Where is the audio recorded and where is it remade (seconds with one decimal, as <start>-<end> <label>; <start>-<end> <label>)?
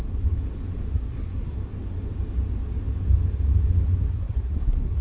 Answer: 0.0-0.9 recorded; 0.9-1.6 remade; 1.6-4.1 recorded; 4.1-5.0 remade